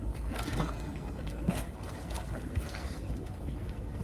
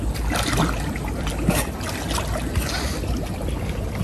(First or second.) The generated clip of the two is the first